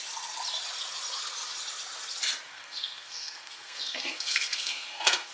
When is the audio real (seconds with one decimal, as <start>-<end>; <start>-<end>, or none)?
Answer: 0.0-2.5